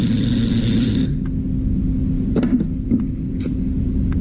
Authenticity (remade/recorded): recorded